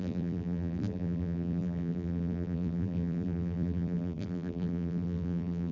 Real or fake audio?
fake